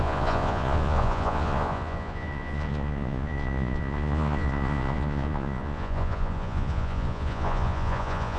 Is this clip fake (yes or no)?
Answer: yes